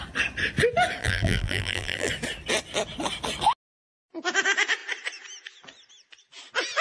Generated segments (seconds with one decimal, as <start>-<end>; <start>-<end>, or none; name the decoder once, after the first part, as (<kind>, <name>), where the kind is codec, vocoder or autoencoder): 1.0-2.1 (vocoder, BigVGAN v2)